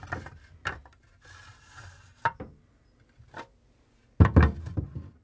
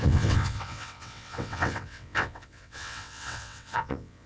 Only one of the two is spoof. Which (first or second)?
second